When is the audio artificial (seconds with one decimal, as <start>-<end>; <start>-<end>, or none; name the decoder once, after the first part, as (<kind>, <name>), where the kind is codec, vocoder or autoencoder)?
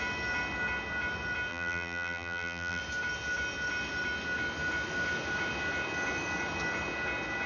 1.5-2.8 (vocoder, BigVGAN v2)